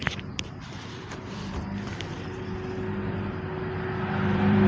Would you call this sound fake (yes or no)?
yes